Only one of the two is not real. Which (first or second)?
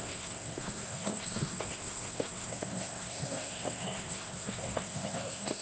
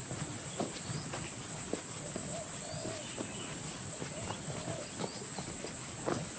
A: first